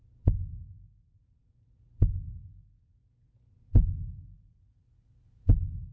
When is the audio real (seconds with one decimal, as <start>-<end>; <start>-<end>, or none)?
0.0-5.9